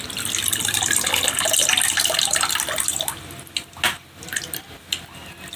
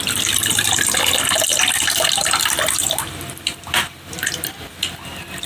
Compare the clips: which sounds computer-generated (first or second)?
second